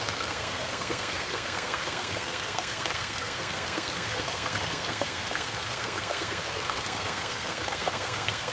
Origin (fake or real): fake